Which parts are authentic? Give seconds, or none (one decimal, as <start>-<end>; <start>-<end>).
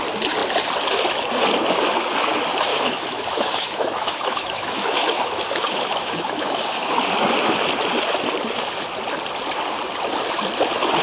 0.0-2.7; 6.9-11.0